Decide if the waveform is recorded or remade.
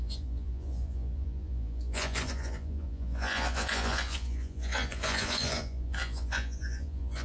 remade